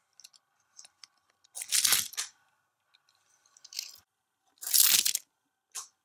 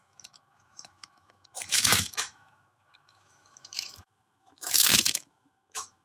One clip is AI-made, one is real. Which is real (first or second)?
first